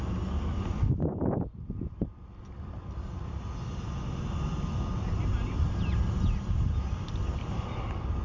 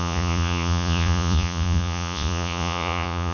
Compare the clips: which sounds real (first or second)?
first